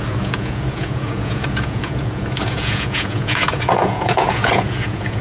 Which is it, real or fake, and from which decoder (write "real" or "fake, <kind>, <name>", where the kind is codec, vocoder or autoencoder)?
fake, vocoder, Vocos